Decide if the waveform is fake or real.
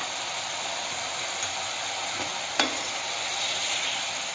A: real